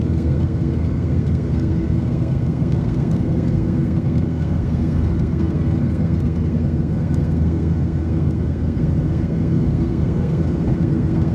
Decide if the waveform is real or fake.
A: fake